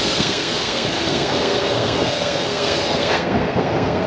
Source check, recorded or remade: remade